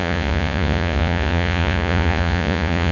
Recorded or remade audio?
remade